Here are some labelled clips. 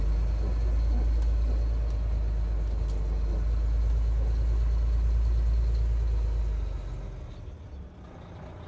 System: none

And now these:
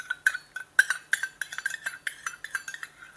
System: none